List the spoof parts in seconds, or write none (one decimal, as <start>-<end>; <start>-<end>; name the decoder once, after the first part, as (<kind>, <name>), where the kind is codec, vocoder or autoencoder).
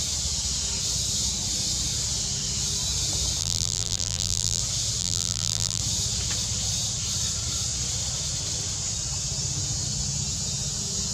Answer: 3.4-4.6 (vocoder, BigVGAN v2); 5.0-5.8